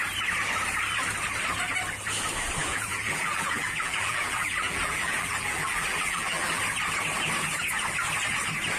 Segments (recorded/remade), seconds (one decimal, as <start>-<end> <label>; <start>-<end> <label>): 0.0-2.6 recorded; 2.6-6.6 remade; 6.6-8.8 recorded